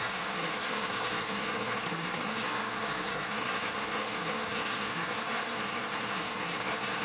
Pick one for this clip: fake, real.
fake